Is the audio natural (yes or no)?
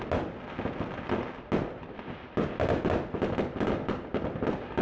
yes